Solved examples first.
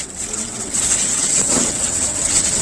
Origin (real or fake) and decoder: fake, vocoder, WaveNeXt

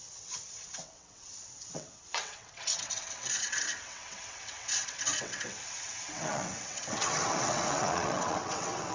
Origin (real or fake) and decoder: fake, vocoder, WaveNeXt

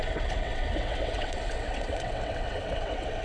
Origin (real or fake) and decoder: fake, vocoder, WaveNeXt